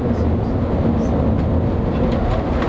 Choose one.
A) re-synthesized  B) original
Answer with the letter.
B